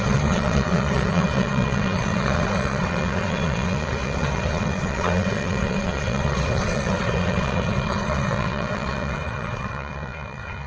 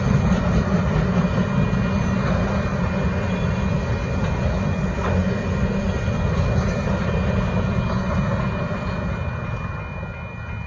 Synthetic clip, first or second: first